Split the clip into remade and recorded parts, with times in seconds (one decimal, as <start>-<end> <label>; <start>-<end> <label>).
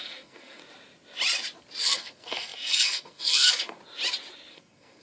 0.0-0.6 remade; 0.6-1.8 recorded; 1.8-3.8 remade; 3.8-4.5 recorded; 4.5-5.0 remade